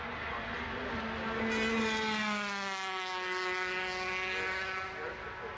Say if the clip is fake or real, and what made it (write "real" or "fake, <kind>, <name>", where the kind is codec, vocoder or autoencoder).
real